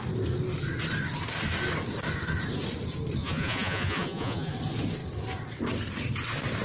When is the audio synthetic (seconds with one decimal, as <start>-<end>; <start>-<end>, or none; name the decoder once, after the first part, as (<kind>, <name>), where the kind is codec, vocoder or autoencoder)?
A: 3.2-4.5 (vocoder, Vocos)